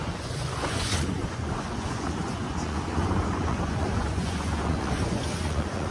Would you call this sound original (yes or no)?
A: no